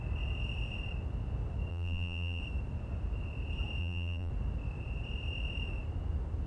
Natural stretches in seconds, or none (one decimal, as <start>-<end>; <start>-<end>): 0.0-1.7; 2.4-3.8; 4.3-6.5